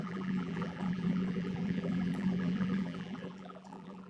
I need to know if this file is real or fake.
fake